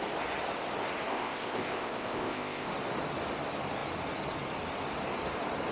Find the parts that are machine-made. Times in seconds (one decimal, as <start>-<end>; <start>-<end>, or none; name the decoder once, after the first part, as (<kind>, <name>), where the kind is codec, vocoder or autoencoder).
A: 1.1-2.7 (codec, ZipCodec)